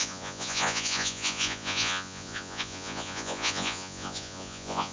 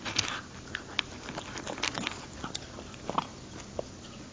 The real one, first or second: second